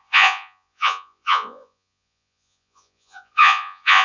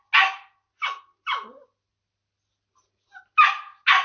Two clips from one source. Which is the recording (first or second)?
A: second